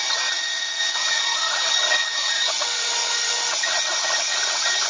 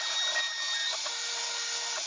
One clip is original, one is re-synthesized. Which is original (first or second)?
second